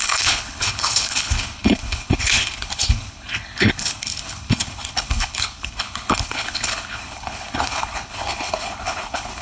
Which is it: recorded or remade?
remade